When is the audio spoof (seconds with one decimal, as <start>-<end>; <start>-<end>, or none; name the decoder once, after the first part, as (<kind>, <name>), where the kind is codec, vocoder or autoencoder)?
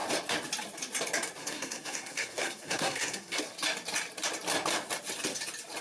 1.4-3.4 (codec, SNAC)